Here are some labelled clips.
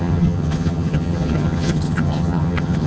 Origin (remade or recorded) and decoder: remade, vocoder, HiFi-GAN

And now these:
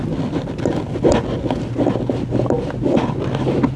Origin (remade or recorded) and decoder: recorded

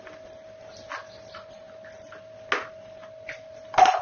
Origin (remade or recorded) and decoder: recorded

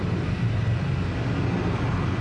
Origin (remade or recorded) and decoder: recorded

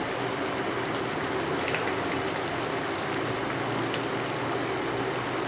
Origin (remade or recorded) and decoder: recorded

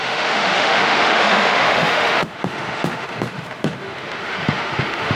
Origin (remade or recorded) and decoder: remade, autoencoder, DAC-VAE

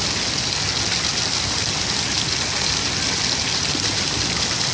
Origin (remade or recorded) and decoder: recorded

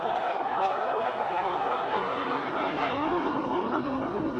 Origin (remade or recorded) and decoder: remade, codec, SNAC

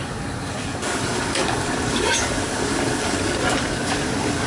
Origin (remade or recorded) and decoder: remade, codec, DAC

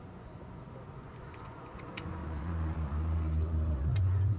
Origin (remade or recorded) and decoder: remade, vocoder, Vocos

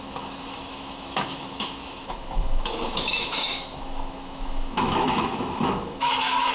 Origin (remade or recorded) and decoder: remade, autoencoder, DAC-VAE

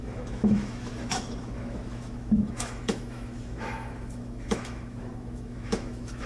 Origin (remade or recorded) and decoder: remade, autoencoder, DAC-VAE